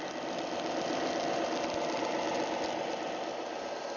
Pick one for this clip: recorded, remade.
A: recorded